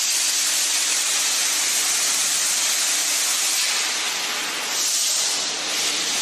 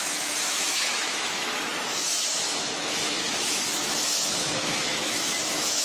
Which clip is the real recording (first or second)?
first